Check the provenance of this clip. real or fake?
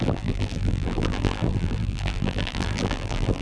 fake